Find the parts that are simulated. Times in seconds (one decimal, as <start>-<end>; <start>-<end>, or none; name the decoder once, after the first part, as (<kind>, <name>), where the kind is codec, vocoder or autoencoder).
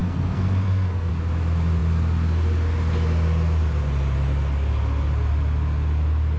0.0-1.1 (codec, SNAC)